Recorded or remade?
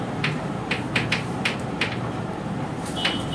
remade